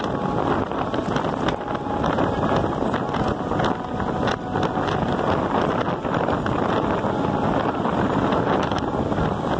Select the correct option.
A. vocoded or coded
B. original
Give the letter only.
B